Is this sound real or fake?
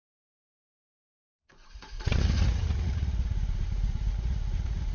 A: fake